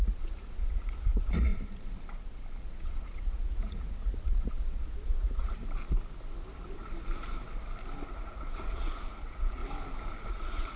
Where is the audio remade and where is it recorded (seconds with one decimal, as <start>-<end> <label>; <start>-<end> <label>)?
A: 0.0-1.5 remade; 1.5-2.6 recorded; 2.6-5.6 remade; 5.6-8.1 recorded; 8.1-9.6 remade; 9.6-10.3 recorded; 10.3-10.8 remade